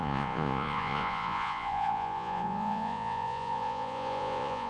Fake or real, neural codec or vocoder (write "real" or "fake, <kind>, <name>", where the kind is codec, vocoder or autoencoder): fake, vocoder, Vocos